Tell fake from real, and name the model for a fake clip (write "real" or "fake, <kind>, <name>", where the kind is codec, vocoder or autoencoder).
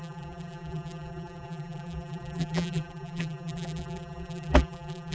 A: fake, vocoder, BigVGAN v2